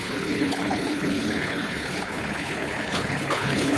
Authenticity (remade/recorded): remade